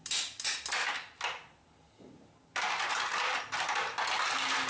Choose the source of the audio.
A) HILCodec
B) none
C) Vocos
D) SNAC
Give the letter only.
B